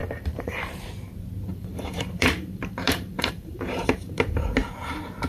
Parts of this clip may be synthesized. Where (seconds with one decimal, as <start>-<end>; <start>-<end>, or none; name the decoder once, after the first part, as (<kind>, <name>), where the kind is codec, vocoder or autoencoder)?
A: 0.0-0.8 (vocoder, BigVGAN v2); 1.5-4.7